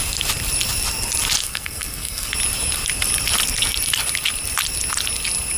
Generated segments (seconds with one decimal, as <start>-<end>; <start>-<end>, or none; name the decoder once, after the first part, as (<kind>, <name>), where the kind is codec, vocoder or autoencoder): 1.4-2.3 (codec, SNAC)